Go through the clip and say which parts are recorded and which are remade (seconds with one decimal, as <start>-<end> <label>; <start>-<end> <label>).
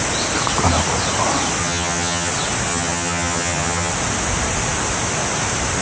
0.0-1.6 recorded; 1.6-2.3 remade; 2.3-2.7 recorded; 2.7-3.9 remade; 3.9-5.8 recorded